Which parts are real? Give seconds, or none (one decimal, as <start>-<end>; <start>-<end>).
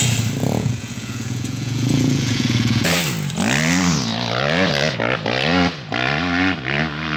0.0-0.4; 2.9-7.2